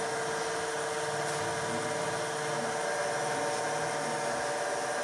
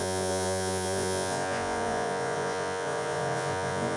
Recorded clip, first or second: first